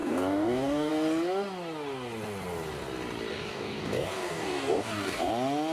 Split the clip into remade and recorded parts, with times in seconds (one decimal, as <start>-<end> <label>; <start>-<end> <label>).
0.0-0.9 remade; 0.9-3.3 recorded; 3.3-5.3 remade; 5.3-5.7 recorded